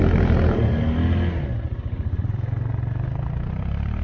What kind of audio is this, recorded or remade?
recorded